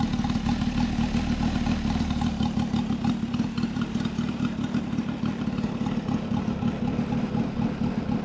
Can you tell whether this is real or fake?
real